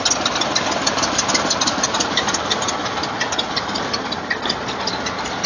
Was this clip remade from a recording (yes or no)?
no